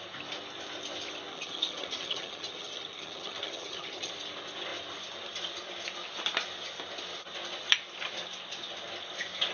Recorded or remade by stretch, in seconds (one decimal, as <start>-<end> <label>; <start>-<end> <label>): 0.0-1.3 recorded; 1.3-4.1 remade; 4.1-9.5 recorded